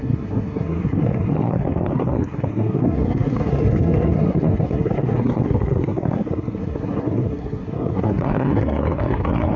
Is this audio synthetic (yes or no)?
yes